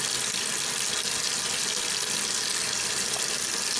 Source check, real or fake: real